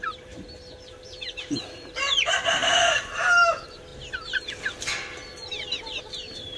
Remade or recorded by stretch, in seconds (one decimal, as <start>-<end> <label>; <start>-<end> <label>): 0.0-3.9 remade; 3.9-6.0 recorded; 6.0-6.6 remade